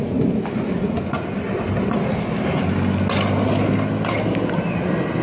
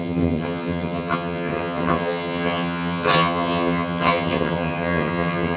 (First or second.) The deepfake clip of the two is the second